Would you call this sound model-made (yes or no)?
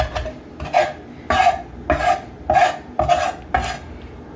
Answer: no